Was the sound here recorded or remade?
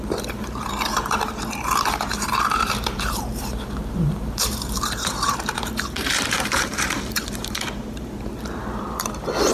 remade